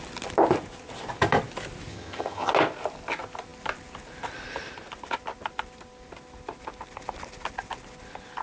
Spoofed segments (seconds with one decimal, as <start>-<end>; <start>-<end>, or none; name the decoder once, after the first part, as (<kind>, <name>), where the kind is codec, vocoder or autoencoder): 1.9-2.5 (vocoder, HiFi-GAN)